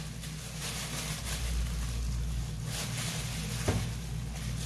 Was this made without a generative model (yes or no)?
yes